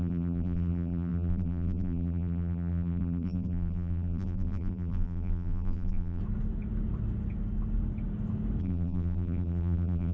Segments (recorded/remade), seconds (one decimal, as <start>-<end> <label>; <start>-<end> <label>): 0.0-6.2 remade; 6.2-8.6 recorded; 8.6-10.1 remade